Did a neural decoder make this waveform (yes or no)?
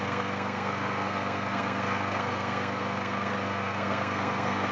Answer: yes